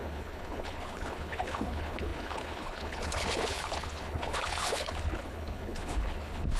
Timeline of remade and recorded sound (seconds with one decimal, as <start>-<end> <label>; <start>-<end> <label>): 0.0-6.6 remade